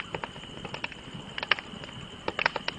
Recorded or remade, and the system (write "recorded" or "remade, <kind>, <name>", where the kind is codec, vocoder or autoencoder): recorded